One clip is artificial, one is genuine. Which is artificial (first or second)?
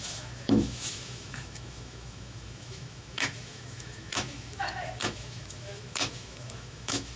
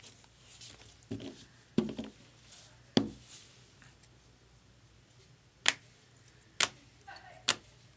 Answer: first